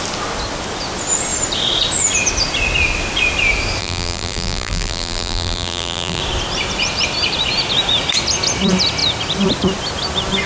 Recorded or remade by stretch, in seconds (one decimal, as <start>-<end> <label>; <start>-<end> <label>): 0.0-3.8 recorded; 3.8-6.2 remade; 6.2-10.5 recorded

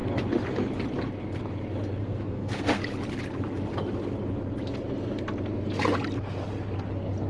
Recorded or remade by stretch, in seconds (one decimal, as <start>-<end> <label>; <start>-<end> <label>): 0.0-2.0 recorded; 2.0-2.8 remade; 2.8-7.3 recorded

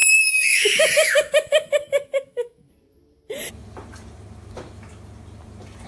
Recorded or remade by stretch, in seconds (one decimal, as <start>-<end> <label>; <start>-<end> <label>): 0.0-2.7 remade; 2.7-5.9 recorded

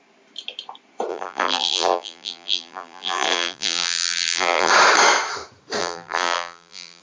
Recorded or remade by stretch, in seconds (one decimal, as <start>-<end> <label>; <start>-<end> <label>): 0.0-1.1 recorded; 1.1-4.7 remade; 4.7-5.8 recorded; 5.8-7.0 remade

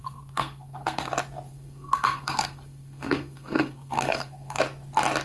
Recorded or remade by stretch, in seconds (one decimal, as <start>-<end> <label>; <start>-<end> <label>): 0.0-1.1 remade; 1.1-1.5 recorded; 1.5-4.6 remade; 4.6-5.2 recorded